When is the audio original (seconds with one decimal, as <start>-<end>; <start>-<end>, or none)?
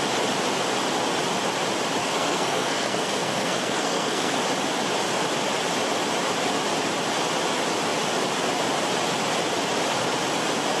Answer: 0.0-2.0; 4.4-10.8